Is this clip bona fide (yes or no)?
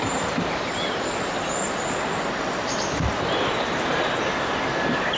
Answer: yes